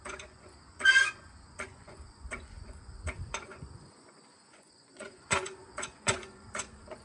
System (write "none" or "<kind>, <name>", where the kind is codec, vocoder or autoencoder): vocoder, Vocos